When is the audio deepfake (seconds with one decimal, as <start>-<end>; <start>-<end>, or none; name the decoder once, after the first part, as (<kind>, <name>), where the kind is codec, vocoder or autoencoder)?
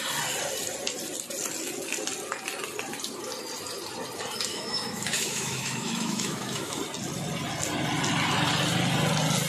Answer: 4.5-6.8 (autoencoder, DAC-VAE)